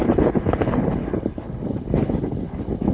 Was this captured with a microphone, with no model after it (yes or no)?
no